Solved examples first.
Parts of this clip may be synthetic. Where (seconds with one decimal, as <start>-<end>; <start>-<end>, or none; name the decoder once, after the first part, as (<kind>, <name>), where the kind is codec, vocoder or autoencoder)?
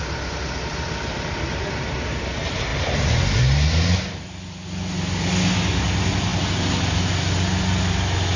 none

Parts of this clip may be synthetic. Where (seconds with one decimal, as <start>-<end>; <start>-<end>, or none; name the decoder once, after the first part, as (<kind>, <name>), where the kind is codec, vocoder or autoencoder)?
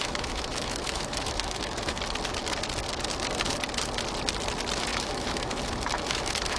0.0-2.0 (autoencoder, DAC-VAE); 4.9-6.6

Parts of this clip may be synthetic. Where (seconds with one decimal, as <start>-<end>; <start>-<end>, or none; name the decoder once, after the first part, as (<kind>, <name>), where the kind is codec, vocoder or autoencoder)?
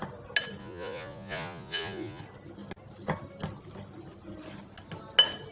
0.6-2.2 (vocoder, Vocos)